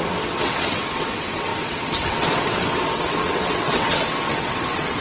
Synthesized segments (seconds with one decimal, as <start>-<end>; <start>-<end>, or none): 0.0-5.0